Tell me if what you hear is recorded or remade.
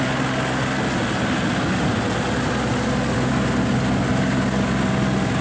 recorded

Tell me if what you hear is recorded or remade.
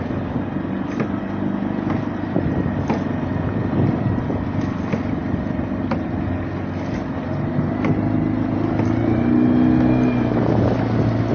recorded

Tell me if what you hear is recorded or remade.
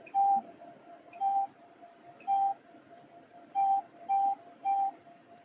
remade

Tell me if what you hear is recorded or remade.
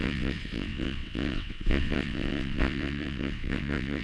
remade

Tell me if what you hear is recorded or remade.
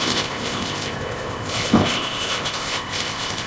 remade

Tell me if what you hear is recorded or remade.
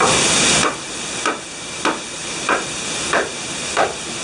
recorded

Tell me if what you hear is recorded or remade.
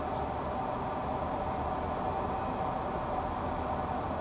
recorded